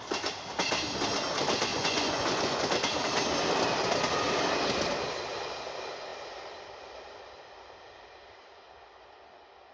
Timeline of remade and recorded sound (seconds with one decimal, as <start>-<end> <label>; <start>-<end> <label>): 0.0-1.7 recorded; 1.7-2.6 remade; 2.6-9.7 recorded